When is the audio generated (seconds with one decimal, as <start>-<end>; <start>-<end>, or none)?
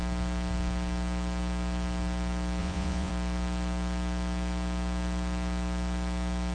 2.6-3.1